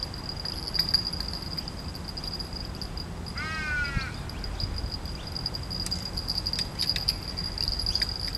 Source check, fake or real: real